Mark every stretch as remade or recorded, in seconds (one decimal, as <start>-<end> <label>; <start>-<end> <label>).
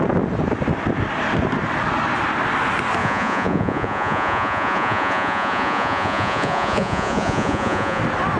0.0-3.0 recorded; 3.0-8.0 remade; 8.0-8.4 recorded